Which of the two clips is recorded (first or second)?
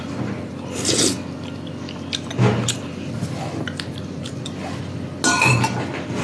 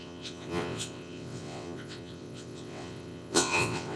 first